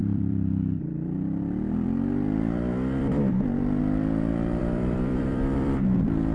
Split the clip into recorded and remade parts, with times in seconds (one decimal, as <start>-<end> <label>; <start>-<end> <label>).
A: 0.0-3.8 remade; 3.8-4.6 recorded; 4.6-5.8 remade; 5.8-6.3 recorded